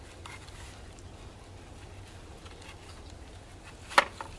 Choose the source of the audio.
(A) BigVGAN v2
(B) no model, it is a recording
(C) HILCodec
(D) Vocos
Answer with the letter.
A